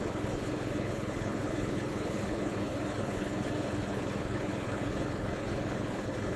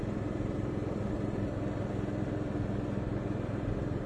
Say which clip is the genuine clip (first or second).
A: second